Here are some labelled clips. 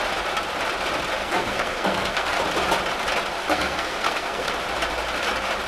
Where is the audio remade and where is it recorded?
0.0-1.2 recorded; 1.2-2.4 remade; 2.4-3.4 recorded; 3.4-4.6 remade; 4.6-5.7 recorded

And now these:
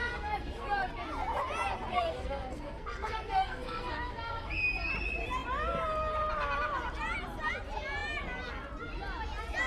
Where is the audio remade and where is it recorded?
0.0-0.9 remade; 0.9-1.9 recorded; 1.9-4.5 remade; 4.5-9.7 recorded

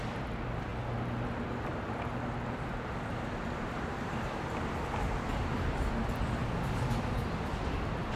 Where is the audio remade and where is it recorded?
0.0-8.2 recorded

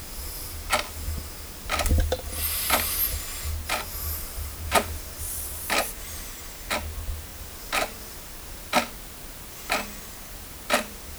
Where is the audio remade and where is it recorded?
0.0-4.5 recorded; 4.5-5.7 remade; 5.7-11.2 recorded

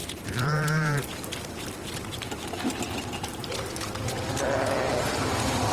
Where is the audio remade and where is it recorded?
0.0-2.8 remade; 2.8-5.7 recorded